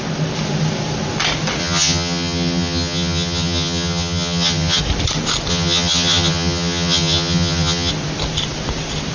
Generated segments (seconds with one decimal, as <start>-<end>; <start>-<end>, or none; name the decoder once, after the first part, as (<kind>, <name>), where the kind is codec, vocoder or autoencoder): 1.6-4.8 (vocoder, HiFi-GAN); 5.5-7.9